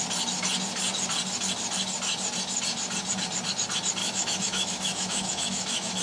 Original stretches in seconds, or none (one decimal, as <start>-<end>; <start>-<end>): 0.0-4.0